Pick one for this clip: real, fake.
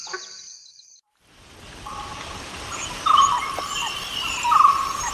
fake